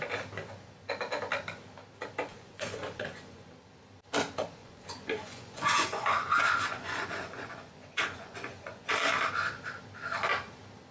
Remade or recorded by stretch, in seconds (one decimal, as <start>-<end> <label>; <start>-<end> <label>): 0.0-2.3 recorded; 2.3-3.5 remade; 3.5-4.6 recorded; 4.6-8.9 remade; 8.9-10.9 recorded